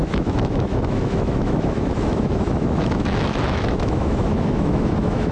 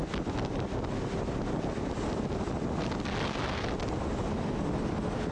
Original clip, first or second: second